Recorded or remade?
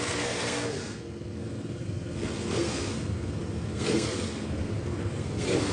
remade